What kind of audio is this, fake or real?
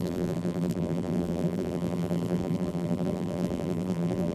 fake